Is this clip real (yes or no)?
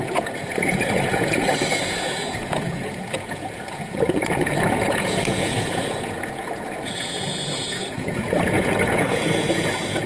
no